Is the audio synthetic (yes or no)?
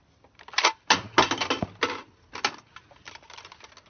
no